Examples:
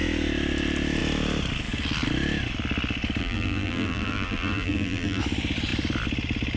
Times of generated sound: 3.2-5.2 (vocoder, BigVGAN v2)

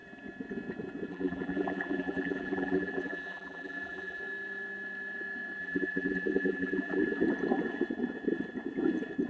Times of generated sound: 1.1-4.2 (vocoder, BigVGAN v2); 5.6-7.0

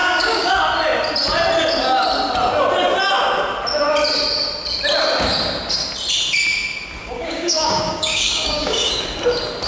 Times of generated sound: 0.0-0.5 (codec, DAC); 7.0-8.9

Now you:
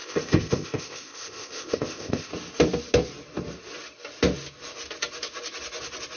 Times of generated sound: 0.0-2.3 (codec, ZipCodec)

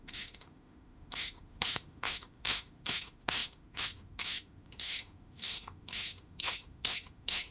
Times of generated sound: 0.0-7.5 (autoencoder, DAC-VAE)

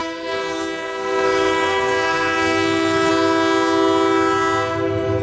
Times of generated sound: 0.0-3.1 (codec, SNAC)